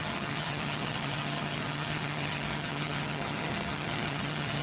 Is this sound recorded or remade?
remade